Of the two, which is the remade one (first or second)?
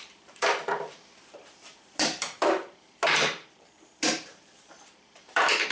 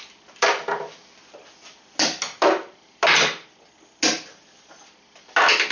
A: first